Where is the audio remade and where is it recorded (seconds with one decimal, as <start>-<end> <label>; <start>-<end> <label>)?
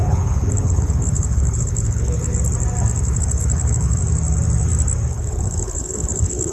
0.0-2.3 remade; 2.3-3.0 recorded; 3.0-4.0 remade; 4.0-5.1 recorded; 5.1-6.5 remade